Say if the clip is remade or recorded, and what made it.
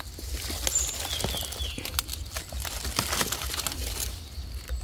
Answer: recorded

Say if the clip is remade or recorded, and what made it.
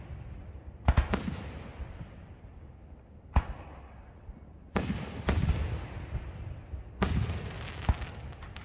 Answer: recorded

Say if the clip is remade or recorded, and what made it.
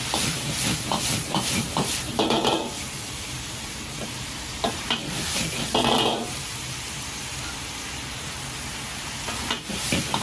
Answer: remade, vocoder, BigVGAN v2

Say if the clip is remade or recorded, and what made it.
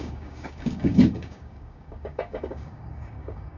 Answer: remade, codec, DAC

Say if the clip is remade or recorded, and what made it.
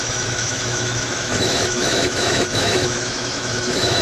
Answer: remade, autoencoder, DAC-VAE